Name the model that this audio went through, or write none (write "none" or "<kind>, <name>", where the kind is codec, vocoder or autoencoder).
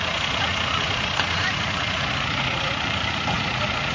vocoder, Vocos